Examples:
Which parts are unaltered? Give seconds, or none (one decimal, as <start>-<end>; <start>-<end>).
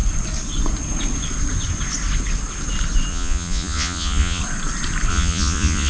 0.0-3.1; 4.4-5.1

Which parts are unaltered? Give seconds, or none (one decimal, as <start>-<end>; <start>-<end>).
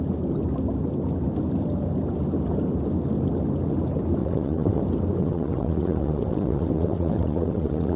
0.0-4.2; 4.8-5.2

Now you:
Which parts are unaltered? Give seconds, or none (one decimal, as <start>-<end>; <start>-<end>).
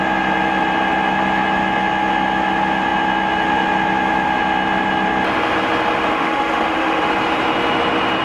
0.0-6.1; 7.1-8.2